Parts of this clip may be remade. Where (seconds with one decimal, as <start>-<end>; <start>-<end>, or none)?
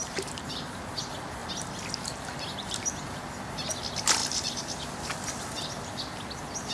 0.0-0.8; 4.2-4.8